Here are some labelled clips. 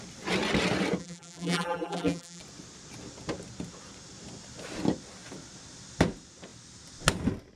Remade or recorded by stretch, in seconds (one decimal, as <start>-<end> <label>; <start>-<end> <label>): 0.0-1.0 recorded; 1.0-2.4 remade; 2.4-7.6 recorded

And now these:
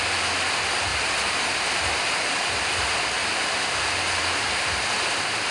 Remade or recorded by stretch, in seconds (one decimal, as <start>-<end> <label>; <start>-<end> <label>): 0.0-0.9 recorded; 0.9-2.3 remade; 2.3-3.2 recorded; 3.2-5.1 remade; 5.1-5.5 recorded

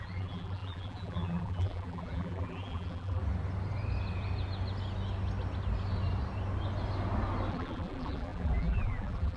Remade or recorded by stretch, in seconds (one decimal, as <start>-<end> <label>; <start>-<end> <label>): 0.0-3.2 remade; 3.2-7.5 recorded; 7.5-9.4 remade